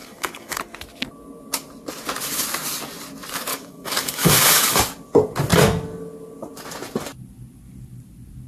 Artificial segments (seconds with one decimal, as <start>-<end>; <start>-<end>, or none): 0.0-0.6; 3.5-4.8